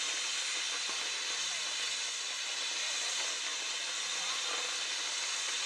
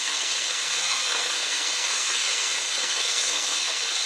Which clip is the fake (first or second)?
second